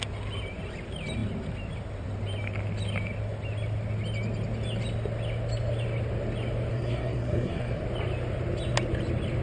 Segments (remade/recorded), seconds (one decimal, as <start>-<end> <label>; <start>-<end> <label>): 0.0-6.7 recorded; 6.7-7.8 remade; 7.8-9.4 recorded